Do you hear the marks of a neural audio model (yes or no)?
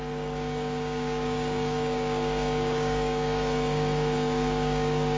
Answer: yes